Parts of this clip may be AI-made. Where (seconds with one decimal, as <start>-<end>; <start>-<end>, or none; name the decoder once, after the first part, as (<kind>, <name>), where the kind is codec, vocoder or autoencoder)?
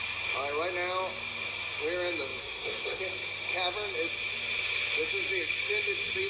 2.4-3.0 (codec, SNAC)